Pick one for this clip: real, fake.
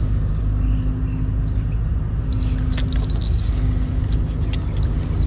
real